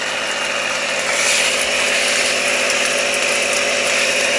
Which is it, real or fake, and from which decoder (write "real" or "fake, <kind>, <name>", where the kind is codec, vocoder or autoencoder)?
real